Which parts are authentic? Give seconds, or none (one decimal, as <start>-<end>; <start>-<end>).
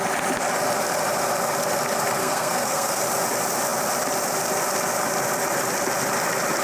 0.0-2.2; 3.0-6.6